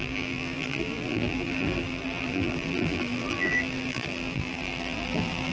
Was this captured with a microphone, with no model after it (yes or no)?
no